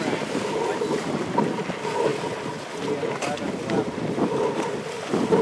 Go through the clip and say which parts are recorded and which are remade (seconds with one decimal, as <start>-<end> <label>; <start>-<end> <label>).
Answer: 0.0-5.4 recorded